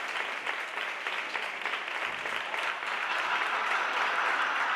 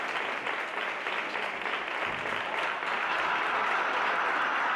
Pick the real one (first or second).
second